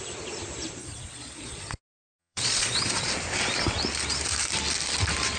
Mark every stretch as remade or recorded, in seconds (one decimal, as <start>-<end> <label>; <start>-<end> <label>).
0.0-0.8 recorded; 0.8-1.8 remade; 1.8-2.2 recorded; 2.2-3.1 remade; 3.1-5.4 recorded